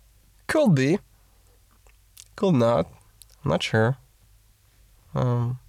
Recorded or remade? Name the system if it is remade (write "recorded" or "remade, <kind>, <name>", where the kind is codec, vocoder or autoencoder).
recorded